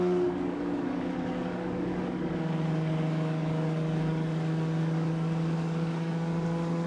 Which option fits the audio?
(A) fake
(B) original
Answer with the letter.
A